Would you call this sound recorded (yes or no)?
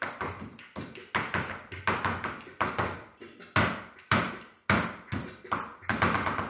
yes